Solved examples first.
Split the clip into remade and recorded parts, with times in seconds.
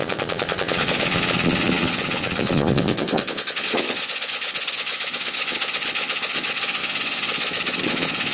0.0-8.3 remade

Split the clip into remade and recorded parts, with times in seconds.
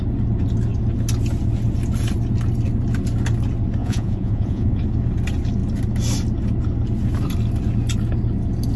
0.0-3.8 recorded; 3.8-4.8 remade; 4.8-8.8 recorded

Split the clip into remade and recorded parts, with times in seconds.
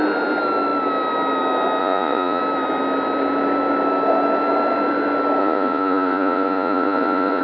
0.0-1.8 recorded; 1.8-2.4 remade; 2.4-5.4 recorded; 5.4-7.4 remade